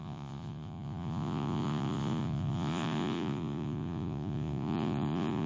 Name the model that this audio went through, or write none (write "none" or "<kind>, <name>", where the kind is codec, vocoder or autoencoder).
vocoder, Vocos